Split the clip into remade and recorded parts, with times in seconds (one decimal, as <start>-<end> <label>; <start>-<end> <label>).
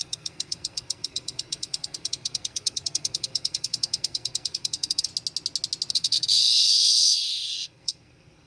0.0-5.1 remade; 5.1-5.9 recorded; 5.9-8.5 remade